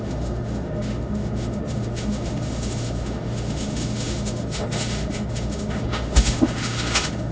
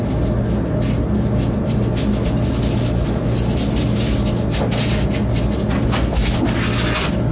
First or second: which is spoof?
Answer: first